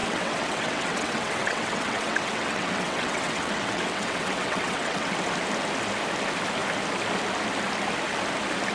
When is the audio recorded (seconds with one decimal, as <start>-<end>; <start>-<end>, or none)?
5.1-8.7